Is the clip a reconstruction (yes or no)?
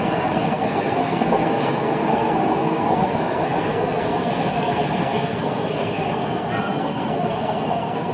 yes